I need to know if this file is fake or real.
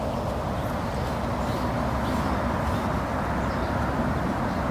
real